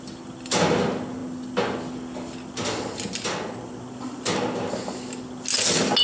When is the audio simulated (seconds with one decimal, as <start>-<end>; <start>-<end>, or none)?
none